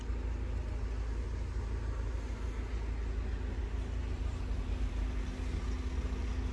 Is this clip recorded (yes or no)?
yes